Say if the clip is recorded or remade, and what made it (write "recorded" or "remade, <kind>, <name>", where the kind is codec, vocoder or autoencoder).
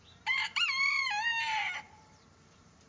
remade, vocoder, BigVGAN v2